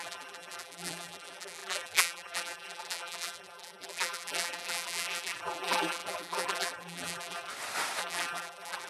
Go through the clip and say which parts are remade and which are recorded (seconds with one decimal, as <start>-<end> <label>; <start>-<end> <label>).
0.0-7.5 remade; 7.5-8.0 recorded; 8.0-8.9 remade